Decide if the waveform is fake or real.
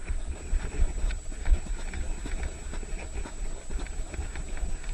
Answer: real